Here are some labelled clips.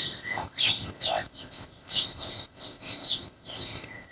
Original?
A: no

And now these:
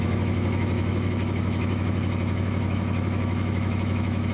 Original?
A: no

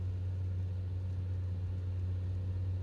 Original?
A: yes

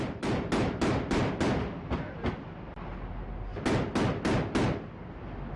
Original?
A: yes